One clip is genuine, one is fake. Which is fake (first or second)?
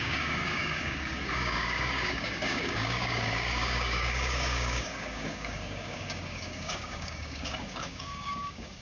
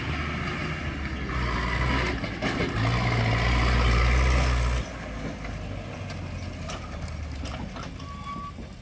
first